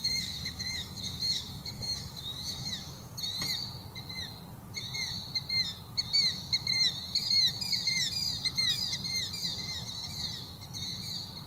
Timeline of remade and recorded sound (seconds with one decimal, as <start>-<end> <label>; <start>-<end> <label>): 0.0-2.7 remade; 2.7-11.5 recorded